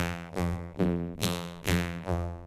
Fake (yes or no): yes